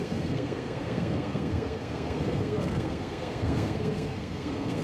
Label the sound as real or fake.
fake